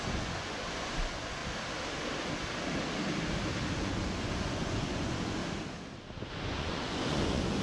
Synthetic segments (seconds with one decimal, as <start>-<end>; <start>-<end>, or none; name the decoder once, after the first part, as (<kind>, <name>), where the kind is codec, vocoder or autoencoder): 0.0-1.4 (vocoder, Vocos); 3.7-5.4; 6.3-7.6